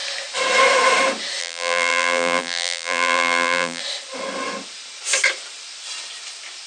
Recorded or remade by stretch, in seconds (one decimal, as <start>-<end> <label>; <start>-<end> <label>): 0.0-1.4 recorded; 1.4-3.8 remade; 3.8-6.7 recorded